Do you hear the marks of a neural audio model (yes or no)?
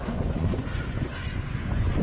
yes